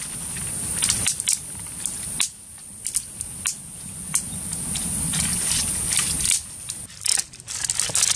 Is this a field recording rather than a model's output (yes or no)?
yes